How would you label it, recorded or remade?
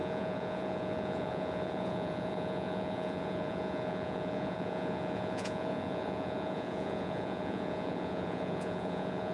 remade